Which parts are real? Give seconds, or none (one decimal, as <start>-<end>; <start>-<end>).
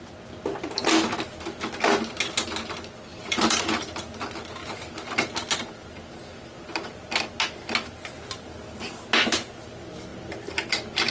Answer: 0.0-3.1; 3.6-11.1